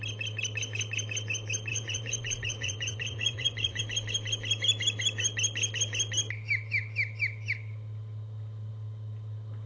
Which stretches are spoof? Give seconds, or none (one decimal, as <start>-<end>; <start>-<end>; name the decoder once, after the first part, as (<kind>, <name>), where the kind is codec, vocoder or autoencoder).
1.7-3.8 (vocoder, Vocos)